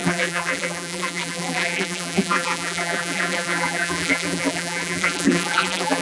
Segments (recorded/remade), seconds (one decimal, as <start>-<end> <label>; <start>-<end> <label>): 0.0-6.0 remade